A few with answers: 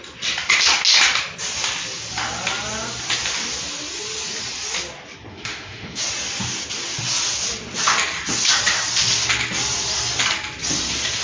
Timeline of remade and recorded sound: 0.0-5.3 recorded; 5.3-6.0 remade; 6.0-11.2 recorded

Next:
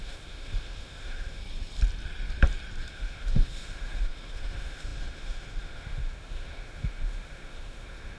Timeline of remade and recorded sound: 0.0-1.4 remade; 1.4-2.9 recorded; 2.9-8.2 remade